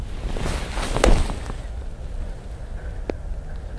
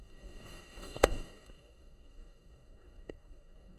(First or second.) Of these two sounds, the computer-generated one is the second